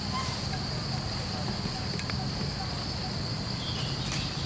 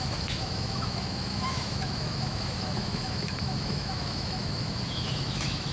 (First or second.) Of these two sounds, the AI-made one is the second